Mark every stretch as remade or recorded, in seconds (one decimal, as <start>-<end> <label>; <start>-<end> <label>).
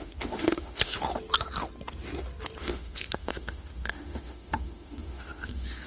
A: 0.0-1.0 remade; 1.0-2.6 recorded; 2.6-5.9 remade